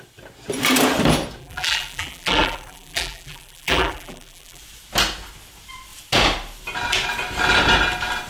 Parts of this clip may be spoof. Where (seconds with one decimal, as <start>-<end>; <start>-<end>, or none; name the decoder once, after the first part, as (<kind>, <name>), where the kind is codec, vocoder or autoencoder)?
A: 1.4-4.6 (vocoder, BigVGAN v2)